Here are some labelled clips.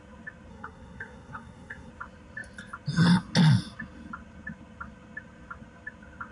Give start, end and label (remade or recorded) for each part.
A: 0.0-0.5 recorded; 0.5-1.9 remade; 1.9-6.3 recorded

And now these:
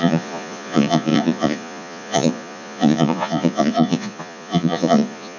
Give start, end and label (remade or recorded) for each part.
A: 0.0-5.4 remade

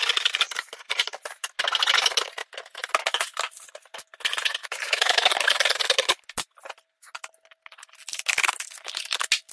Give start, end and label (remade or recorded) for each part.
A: 0.0-4.6 recorded; 4.6-5.3 remade; 5.3-9.5 recorded

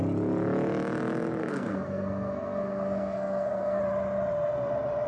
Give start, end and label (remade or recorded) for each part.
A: 0.0-1.4 recorded; 1.4-3.8 remade; 3.8-5.1 recorded

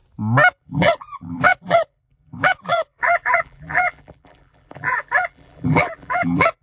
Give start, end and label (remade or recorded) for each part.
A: 0.0-0.6 recorded; 0.6-6.6 remade

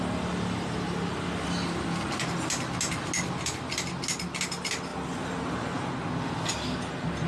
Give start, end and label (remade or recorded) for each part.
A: 0.0-7.3 recorded

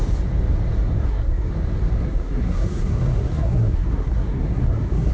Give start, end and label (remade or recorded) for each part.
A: 0.0-1.0 recorded; 1.0-1.5 remade; 1.5-2.0 recorded; 2.0-5.1 remade

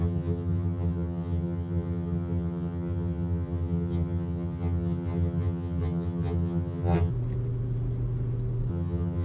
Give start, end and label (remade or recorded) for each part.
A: 0.0-7.1 remade; 7.1-8.7 recorded; 8.7-9.2 remade